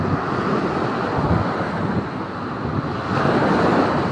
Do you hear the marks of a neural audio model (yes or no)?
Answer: no